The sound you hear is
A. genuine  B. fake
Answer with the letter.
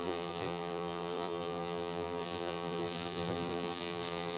B